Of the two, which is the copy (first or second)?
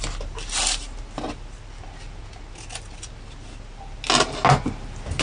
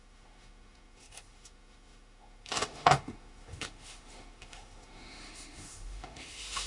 second